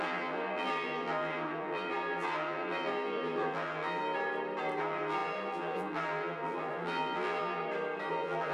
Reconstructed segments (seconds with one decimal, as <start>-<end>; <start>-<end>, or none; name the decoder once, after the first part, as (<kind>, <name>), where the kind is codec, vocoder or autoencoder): 0.0-4.0 (vocoder, BigVGAN v2); 4.8-7.6; 8.1-8.5